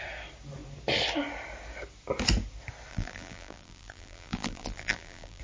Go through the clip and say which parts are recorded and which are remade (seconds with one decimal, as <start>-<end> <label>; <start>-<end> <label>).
0.0-2.9 recorded; 2.9-5.4 remade